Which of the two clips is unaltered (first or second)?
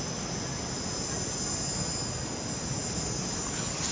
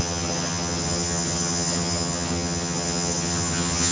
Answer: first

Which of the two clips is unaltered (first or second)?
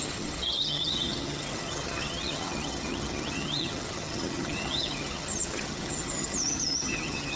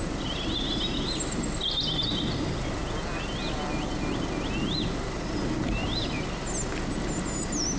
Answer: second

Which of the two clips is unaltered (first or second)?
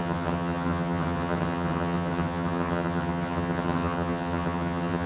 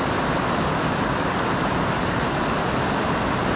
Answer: second